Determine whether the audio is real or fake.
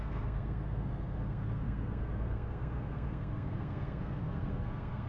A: fake